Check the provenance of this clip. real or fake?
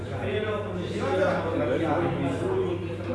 real